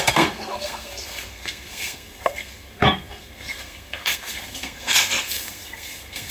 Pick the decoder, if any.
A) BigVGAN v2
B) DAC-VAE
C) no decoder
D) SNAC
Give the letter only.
D